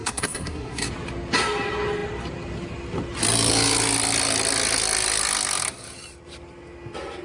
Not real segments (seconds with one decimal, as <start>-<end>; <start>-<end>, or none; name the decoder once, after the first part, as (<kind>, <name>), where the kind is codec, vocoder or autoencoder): 0.0-0.9 (codec, SNAC)